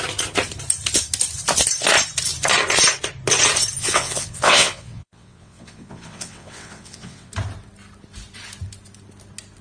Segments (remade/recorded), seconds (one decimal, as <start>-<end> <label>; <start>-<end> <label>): 0.0-3.8 recorded; 3.8-7.3 remade; 7.3-9.6 recorded